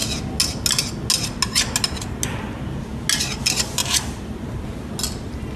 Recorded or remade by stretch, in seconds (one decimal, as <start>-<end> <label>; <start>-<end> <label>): 0.0-5.6 recorded

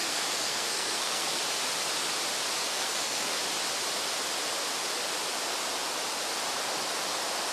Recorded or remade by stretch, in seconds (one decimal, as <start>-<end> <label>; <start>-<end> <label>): 0.0-1.4 remade; 1.4-2.6 recorded; 2.6-3.4 remade; 3.4-7.5 recorded